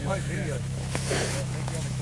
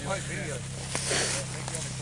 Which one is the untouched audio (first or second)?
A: second